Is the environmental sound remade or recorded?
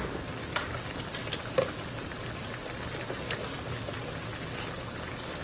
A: recorded